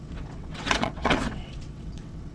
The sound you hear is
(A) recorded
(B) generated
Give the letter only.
B